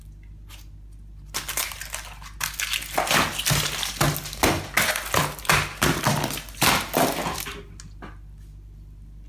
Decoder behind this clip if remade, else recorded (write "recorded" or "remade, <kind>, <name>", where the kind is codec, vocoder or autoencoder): recorded